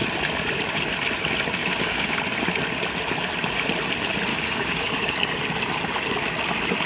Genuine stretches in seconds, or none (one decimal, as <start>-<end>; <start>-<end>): 0.0-1.6; 2.2-4.3; 5.1-6.9